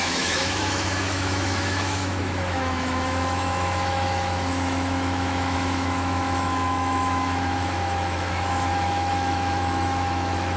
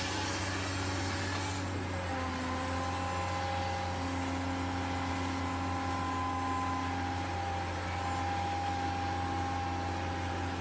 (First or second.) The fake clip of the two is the first